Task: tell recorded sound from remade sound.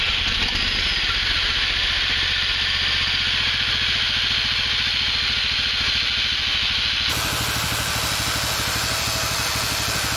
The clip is recorded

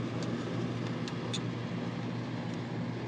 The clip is recorded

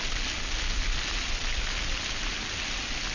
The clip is recorded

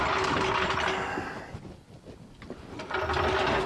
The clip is recorded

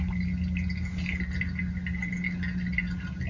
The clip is recorded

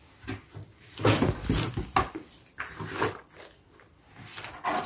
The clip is recorded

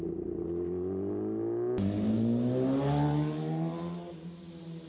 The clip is recorded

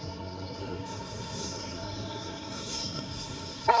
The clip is remade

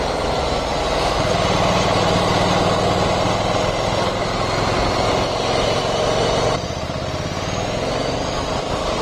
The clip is recorded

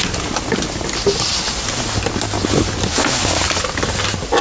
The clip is recorded